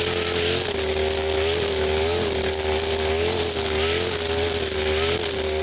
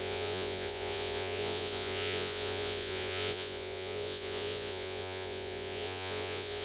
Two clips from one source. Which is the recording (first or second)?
first